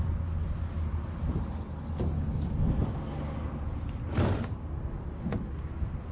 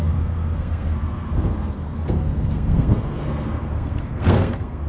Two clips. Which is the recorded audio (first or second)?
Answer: first